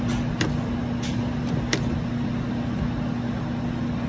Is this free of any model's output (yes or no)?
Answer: yes